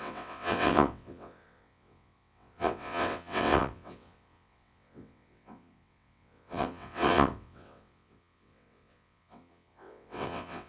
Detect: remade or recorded remade